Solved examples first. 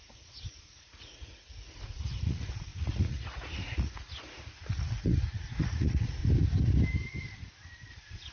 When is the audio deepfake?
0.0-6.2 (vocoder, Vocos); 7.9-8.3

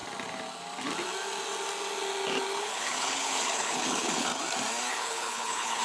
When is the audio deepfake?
2.6-4.3 (codec, HILCodec); 4.9-5.8

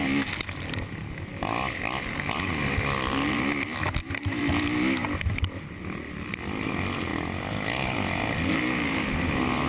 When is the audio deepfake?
4.0-4.5 (vocoder, BigVGAN v2)

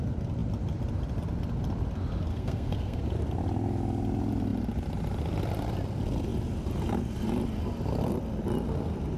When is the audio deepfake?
2.3-3.0 (codec, SNAC)

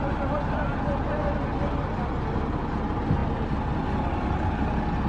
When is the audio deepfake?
none